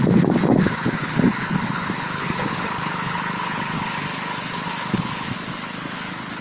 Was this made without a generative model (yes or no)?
no